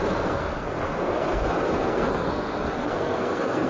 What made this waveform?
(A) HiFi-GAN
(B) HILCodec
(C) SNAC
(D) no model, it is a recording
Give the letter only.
C